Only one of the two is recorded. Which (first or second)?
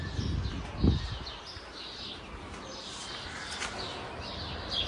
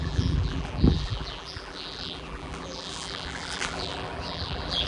first